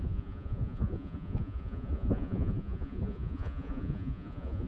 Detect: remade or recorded remade